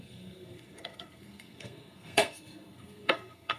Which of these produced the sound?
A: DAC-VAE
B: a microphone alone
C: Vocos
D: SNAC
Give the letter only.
D